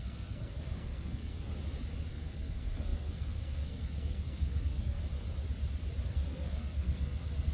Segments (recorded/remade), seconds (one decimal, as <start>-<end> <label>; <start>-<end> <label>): 0.0-1.5 remade; 1.5-2.1 recorded; 2.1-5.0 remade; 5.0-6.1 recorded; 6.1-7.5 remade